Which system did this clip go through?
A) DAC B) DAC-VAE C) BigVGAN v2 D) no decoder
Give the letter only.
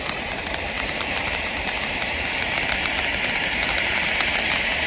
C